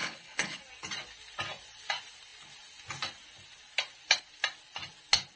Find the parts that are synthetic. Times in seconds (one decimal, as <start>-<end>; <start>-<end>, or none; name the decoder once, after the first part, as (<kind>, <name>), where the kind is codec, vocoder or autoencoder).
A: 0.0-0.6 (codec, HILCodec)

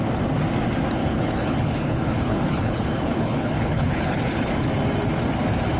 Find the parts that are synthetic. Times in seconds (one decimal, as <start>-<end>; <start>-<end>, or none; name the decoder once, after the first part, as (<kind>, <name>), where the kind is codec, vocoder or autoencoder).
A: 1.0-4.5 (codec, HILCodec)